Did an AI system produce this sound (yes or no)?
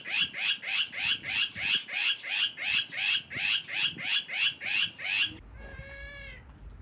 no